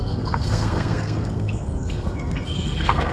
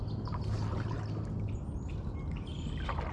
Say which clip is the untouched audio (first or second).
second